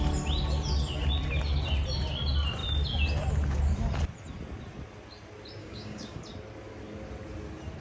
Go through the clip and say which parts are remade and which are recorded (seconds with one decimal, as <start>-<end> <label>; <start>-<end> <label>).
0.0-5.6 recorded; 5.6-6.2 remade; 6.2-7.8 recorded